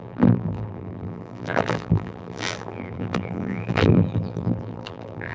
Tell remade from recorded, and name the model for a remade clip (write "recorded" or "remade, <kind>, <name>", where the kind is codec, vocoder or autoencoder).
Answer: remade, vocoder, BigVGAN v2